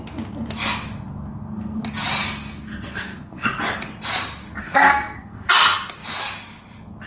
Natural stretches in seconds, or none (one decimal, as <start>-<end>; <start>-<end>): 0.0-1.3; 1.8-2.2; 3.6-4.6; 5.5-7.1

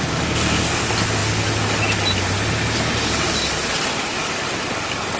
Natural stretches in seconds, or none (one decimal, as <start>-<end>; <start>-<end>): 0.0-5.2

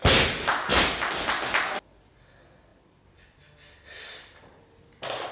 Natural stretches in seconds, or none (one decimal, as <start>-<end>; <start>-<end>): 0.0-5.3

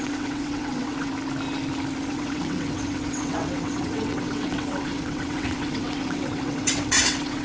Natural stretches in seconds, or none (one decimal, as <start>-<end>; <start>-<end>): 1.1-2.1

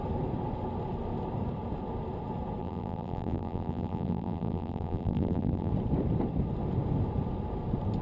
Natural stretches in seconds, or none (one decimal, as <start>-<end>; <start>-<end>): 0.0-2.6; 5.7-8.0

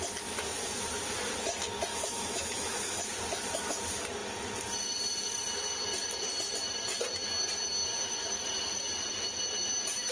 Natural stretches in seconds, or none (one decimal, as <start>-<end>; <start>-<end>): 0.0-1.9; 3.0-10.1